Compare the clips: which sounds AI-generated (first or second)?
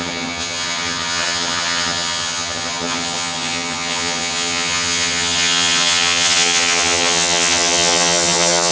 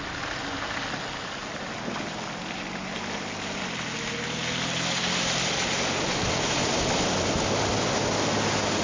first